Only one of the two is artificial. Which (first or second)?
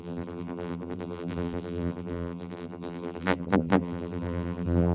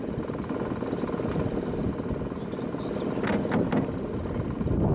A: first